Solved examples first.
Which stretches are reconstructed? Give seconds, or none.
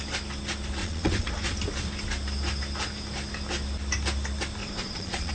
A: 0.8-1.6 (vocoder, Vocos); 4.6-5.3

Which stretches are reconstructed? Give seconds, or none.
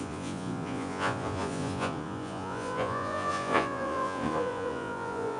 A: 0.0-5.4 (vocoder, Vocos)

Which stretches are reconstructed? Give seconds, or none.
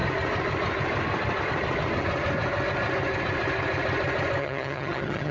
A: 4.4-5.3 (vocoder, HiFi-GAN)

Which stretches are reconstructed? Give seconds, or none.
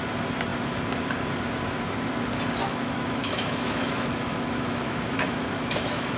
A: 2.6-6.2 (autoencoder, DAC-VAE)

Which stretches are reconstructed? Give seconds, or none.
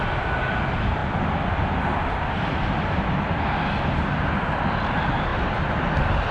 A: none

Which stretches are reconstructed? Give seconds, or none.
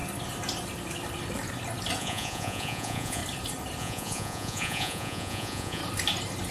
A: 2.0-3.2 (vocoder, Vocos); 3.8-5.8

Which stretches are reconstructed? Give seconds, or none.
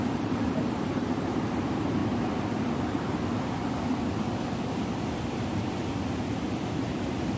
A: 0.0-2.0 (vocoder, BigVGAN v2); 2.8-3.6; 6.8-7.4